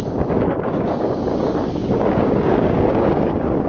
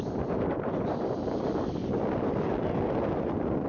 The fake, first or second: first